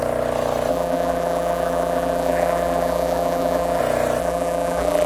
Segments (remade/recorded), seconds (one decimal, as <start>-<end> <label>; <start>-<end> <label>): 0.0-0.7 recorded; 0.7-3.8 remade; 3.8-4.2 recorded; 4.2-5.1 remade